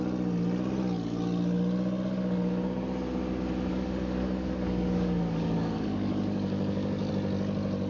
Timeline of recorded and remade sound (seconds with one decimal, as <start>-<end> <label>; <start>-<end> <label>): 0.0-3.7 recorded; 3.7-7.1 remade; 7.1-7.9 recorded